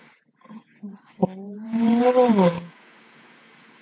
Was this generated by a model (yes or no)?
yes